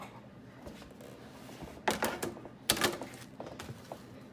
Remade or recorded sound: recorded